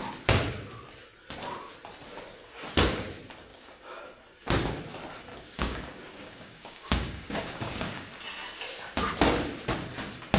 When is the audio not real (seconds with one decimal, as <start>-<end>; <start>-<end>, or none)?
3.5-4.0; 5.3-8.1